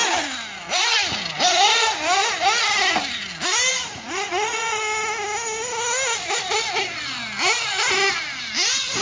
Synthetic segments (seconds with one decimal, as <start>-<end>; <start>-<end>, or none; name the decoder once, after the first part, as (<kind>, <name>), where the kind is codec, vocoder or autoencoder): 3.7-4.8 (vocoder, Vocos)